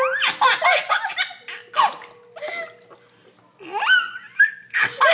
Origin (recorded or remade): recorded